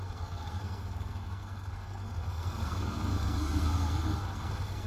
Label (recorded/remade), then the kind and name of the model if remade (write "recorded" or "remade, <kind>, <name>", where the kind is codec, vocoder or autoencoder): remade, codec, SNAC